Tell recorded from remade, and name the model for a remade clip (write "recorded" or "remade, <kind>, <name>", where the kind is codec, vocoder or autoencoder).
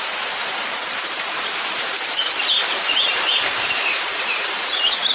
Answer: remade, vocoder, BigVGAN v2